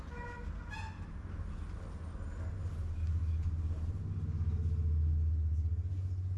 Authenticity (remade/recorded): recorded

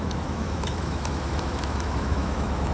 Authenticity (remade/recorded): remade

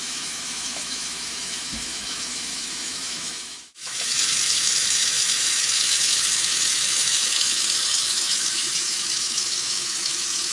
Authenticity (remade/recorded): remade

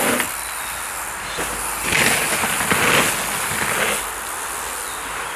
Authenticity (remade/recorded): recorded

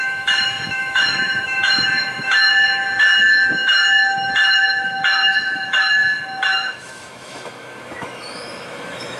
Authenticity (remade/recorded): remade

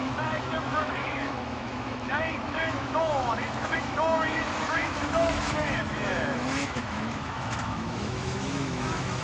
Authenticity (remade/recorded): remade